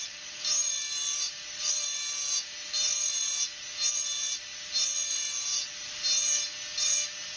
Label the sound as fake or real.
real